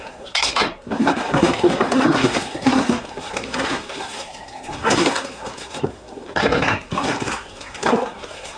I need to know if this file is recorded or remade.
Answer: remade